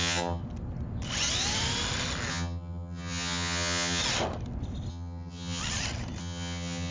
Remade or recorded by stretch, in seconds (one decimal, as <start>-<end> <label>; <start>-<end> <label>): 0.0-0.4 remade; 0.4-2.3 recorded; 2.3-4.0 remade; 4.0-4.9 recorded; 4.9-5.6 remade; 5.6-6.2 recorded; 6.2-6.9 remade